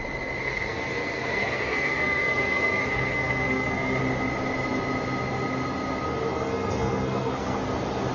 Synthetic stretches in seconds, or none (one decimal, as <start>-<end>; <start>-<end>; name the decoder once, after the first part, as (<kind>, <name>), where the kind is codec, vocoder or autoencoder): 0.4-4.0 (codec, SNAC); 6.3-7.6